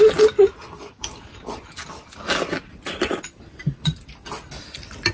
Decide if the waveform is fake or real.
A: real